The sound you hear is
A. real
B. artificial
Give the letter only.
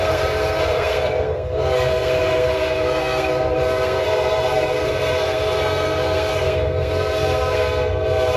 B